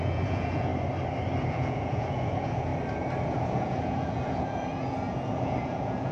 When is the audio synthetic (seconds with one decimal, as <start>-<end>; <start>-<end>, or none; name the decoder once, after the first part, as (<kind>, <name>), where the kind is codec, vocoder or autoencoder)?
0.0-0.7 (vocoder, Vocos); 1.5-2.7; 3.3-6.1